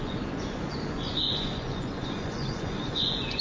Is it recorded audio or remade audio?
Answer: remade